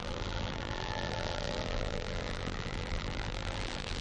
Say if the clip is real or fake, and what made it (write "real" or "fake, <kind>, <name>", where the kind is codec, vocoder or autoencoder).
fake, vocoder, BigVGAN v2